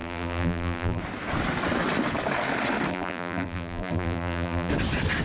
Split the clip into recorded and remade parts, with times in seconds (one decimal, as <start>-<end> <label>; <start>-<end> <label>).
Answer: 0.0-1.0 remade; 1.0-2.9 recorded; 2.9-4.7 remade; 4.7-5.2 recorded